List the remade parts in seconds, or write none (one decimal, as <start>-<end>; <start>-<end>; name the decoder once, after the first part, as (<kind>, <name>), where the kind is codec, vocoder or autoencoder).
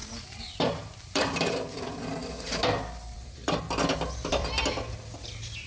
0.0-1.8 (vocoder, BigVGAN v2); 3.0-3.6